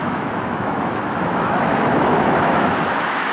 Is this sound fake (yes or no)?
yes